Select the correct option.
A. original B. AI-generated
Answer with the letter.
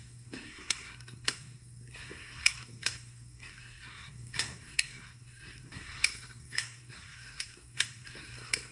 B